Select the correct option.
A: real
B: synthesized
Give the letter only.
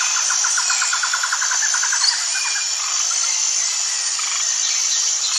A